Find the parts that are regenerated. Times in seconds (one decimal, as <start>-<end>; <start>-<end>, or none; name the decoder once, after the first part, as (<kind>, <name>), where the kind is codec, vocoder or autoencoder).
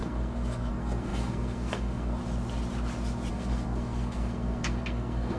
0.0-2.2 (codec, SNAC); 3.3-5.4